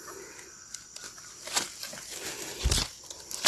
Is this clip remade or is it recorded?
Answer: recorded